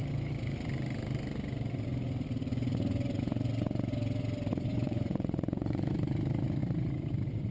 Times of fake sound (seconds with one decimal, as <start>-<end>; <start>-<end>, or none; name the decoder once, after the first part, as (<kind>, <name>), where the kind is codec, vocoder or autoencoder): 4.7-5.9 (vocoder, Vocos)

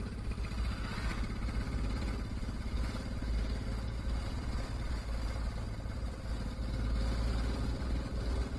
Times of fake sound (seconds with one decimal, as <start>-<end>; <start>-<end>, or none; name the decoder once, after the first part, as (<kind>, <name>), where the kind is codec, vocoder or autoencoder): none

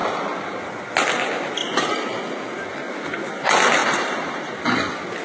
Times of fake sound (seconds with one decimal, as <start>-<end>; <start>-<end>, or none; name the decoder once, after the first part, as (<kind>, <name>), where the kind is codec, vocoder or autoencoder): 1.6-2.2 (vocoder, BigVGAN v2); 3.8-4.6

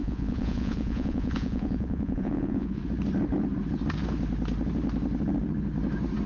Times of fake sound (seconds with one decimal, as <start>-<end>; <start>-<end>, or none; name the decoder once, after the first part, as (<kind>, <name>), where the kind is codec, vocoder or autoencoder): 0.0-2.8 (vocoder, Vocos)

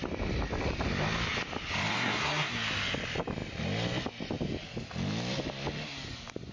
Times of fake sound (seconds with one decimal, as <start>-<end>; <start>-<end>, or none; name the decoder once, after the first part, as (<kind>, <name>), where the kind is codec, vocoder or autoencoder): 1.9-2.5 (codec, SNAC)

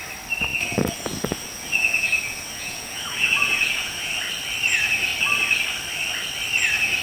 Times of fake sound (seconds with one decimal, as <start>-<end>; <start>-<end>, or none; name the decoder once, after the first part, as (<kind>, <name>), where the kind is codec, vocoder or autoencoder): 0.5-4.1 (vocoder, Vocos)

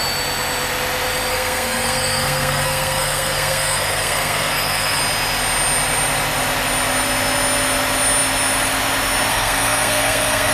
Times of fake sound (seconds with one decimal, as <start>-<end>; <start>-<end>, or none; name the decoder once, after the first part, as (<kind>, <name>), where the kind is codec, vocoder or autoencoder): 1.3-5.0 (codec, SNAC); 9.3-10.5

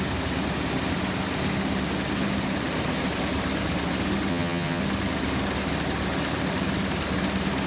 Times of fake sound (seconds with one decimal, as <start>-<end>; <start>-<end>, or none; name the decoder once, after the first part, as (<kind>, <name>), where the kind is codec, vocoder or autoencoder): 4.3-4.8 (vocoder, HiFi-GAN)